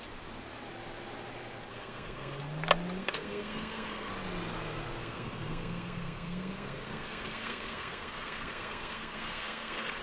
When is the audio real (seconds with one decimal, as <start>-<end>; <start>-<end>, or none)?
0.0-1.7; 2.4-3.0; 4.1-5.0